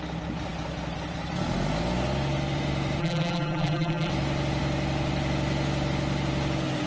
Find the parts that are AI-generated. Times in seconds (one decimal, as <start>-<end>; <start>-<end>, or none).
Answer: 3.0-4.1